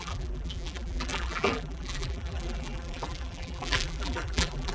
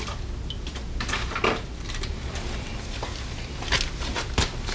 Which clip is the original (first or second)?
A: second